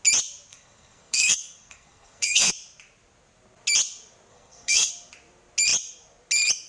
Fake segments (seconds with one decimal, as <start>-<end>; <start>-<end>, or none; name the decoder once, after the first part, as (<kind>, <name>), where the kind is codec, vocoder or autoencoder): 0.5-2.5 (codec, SNAC); 4.3-4.9